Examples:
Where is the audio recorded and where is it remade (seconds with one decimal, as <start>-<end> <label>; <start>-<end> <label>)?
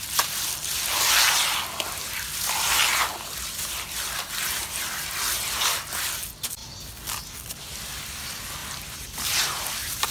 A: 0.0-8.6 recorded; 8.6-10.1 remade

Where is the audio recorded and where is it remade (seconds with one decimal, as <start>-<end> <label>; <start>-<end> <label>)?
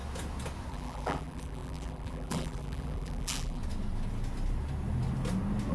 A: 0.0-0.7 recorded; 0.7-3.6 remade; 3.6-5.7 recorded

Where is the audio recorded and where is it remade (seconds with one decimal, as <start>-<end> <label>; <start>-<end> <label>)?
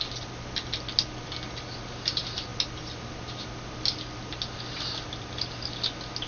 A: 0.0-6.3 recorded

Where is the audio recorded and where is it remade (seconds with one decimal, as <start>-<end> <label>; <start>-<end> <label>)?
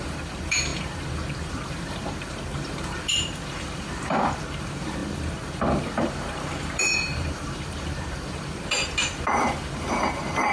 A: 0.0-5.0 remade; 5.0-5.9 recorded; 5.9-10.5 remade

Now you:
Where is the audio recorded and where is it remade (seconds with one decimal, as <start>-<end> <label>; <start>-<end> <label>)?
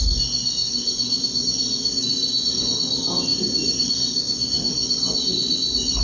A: 0.0-3.3 recorded; 3.3-3.9 remade; 3.9-6.0 recorded